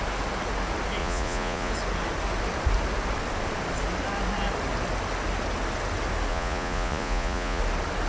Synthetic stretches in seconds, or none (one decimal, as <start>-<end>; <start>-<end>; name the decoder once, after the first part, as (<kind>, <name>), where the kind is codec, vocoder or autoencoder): 1.0-1.7 (vocoder, Vocos); 6.3-7.6